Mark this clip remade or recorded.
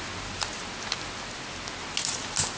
recorded